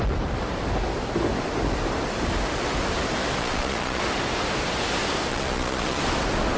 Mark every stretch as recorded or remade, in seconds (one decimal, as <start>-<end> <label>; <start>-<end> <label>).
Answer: 0.0-3.4 recorded; 3.4-4.0 remade; 4.0-5.3 recorded; 5.3-6.0 remade; 6.0-6.6 recorded

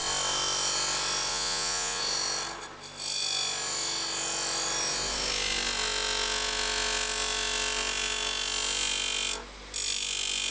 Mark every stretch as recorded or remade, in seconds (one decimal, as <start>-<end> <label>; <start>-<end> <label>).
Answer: 0.0-1.3 recorded; 1.3-2.0 remade; 2.0-10.5 recorded